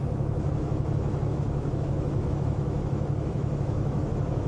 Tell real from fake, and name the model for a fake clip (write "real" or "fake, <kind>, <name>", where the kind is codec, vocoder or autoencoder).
fake, autoencoder, DAC-VAE